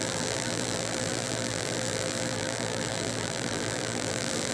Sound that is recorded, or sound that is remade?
remade